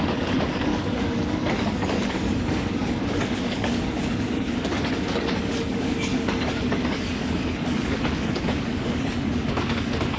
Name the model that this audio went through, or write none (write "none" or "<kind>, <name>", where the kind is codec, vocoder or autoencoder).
codec, DAC